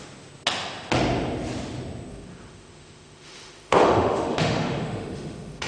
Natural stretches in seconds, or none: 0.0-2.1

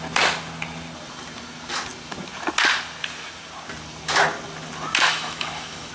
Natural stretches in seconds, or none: 0.0-5.1

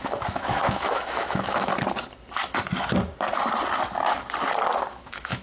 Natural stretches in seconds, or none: 1.7-4.9

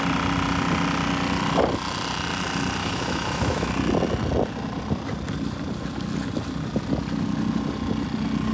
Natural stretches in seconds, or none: 0.0-2.8; 3.7-8.5